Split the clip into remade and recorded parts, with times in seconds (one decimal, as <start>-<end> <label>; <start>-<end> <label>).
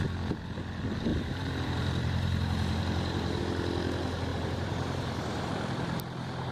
0.0-1.1 recorded; 1.1-3.4 remade; 3.4-4.3 recorded; 4.3-5.5 remade; 5.5-6.5 recorded